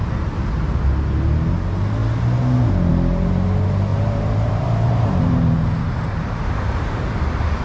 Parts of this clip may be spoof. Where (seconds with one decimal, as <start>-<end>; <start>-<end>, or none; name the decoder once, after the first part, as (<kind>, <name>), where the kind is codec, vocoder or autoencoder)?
3.9-7.1 (vocoder, BigVGAN v2)